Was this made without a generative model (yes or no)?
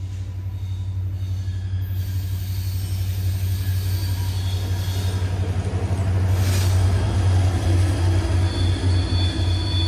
yes